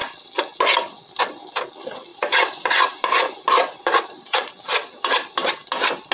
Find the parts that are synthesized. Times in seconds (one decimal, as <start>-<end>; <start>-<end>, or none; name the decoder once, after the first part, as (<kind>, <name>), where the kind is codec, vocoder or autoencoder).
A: 2.1-5.5 (vocoder, BigVGAN v2)

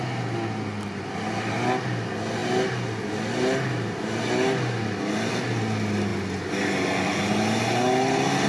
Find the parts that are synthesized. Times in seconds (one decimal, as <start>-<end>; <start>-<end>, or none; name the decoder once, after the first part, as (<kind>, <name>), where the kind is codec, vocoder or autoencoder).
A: none